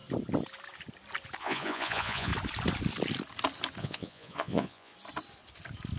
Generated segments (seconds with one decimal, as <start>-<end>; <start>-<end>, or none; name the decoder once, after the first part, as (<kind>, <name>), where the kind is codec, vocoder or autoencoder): 1.4-2.3 (vocoder, Vocos); 3.8-4.9